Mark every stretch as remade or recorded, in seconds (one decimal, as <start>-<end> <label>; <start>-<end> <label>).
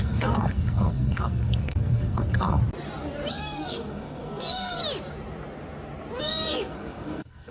0.0-2.6 remade; 2.6-3.3 recorded; 3.3-4.8 remade; 4.8-6.2 recorded; 6.2-7.5 remade